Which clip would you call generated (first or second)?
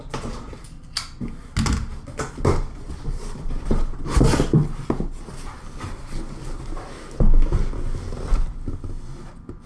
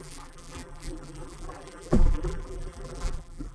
second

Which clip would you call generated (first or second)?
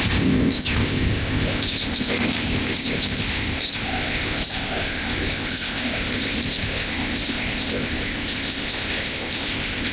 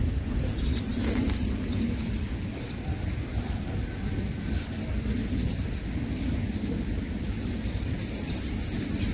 first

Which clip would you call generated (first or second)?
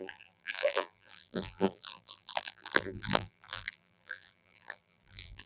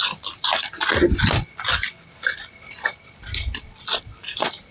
first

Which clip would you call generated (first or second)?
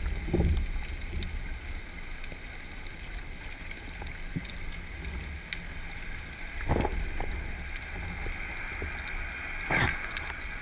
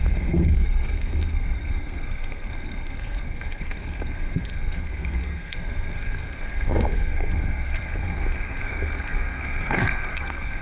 second